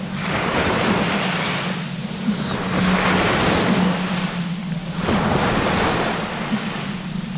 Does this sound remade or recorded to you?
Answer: recorded